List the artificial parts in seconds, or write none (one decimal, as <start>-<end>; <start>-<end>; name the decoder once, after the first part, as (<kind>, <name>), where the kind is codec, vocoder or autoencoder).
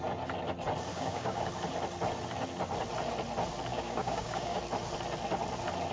0.9-1.5 (codec, DAC); 3.7-4.6